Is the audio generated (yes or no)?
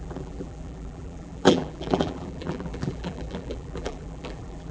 yes